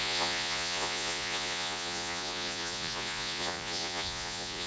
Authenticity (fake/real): fake